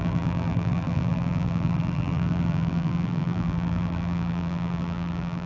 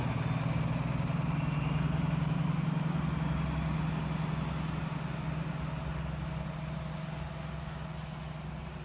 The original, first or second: second